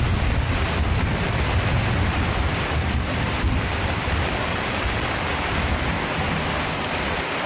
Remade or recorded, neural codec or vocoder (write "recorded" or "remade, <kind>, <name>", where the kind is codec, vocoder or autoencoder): recorded